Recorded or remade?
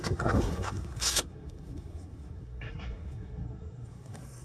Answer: remade